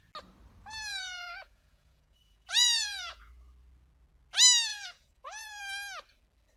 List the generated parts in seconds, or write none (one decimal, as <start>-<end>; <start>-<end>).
0.9-3.3; 4.7-5.6